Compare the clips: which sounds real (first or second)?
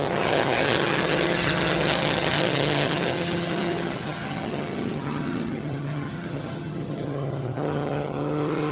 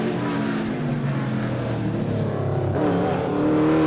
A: second